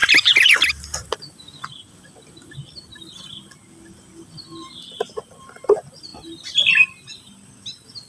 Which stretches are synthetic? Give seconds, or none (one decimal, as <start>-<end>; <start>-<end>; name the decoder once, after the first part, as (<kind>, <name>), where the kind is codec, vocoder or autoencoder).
1.7-6.1 (vocoder, BigVGAN v2)